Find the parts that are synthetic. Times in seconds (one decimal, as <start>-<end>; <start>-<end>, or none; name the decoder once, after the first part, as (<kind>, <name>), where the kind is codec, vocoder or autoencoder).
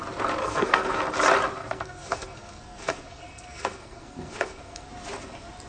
0.4-1.0 (codec, SNAC); 1.6-4.9